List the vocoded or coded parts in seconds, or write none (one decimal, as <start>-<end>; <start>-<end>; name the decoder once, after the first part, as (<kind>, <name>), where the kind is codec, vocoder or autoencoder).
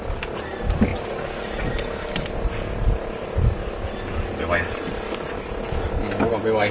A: none